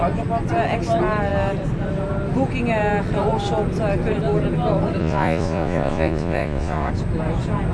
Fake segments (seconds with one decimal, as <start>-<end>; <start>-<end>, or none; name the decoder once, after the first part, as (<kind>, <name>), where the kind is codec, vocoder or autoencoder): 5.0-6.9 (vocoder, Vocos)